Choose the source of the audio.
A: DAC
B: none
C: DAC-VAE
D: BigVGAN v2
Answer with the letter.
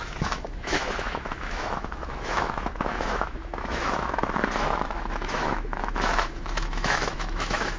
C